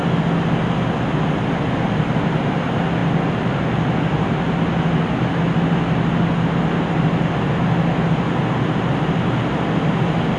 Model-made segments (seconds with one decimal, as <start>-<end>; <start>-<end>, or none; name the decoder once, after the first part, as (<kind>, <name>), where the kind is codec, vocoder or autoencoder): none